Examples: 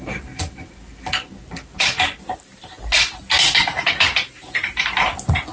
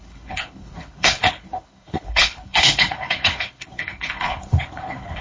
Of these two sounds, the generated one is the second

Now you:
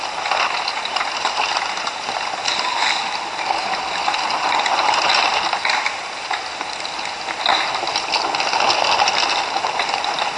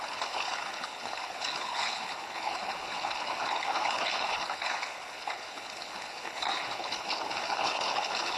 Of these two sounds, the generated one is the second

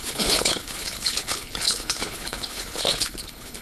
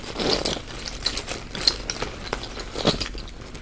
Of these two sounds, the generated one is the first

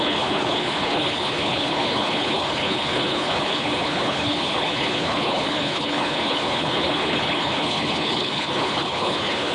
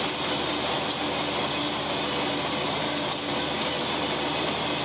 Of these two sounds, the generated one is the first